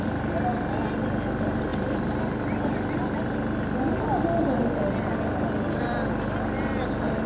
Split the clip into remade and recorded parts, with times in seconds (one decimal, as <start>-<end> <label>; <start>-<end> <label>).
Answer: 0.0-7.3 recorded